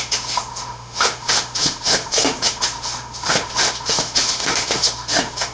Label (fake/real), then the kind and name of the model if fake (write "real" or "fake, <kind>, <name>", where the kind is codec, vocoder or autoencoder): fake, autoencoder, DAC-VAE